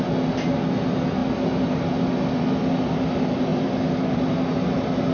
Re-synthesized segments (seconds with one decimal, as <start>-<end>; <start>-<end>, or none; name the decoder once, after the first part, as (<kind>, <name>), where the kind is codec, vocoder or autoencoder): 3.5-4.4 (vocoder, BigVGAN v2)